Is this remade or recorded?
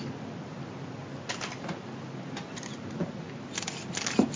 recorded